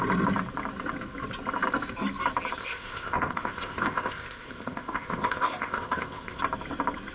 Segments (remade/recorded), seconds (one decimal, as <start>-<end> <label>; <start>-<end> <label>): 0.0-2.6 recorded; 2.6-6.4 remade; 6.4-7.1 recorded